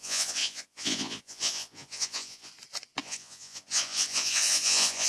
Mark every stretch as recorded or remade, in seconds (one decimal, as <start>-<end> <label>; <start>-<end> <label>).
0.0-2.5 remade; 2.5-3.0 recorded; 3.0-5.1 remade